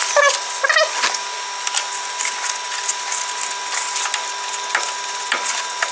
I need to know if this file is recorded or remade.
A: recorded